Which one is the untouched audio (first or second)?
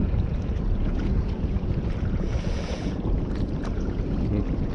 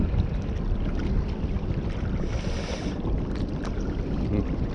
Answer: second